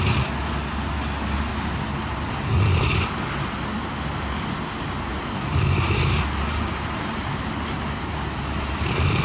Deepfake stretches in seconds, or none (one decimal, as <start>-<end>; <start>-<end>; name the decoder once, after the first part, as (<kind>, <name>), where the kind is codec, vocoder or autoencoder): 1.5-2.3 (vocoder, BigVGAN v2); 5.1-9.2